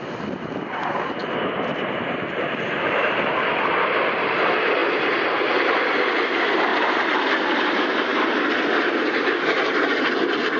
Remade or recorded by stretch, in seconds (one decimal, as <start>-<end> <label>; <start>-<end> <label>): 0.0-1.2 recorded; 1.2-3.0 remade; 3.0-6.7 recorded; 6.7-7.7 remade; 7.7-10.6 recorded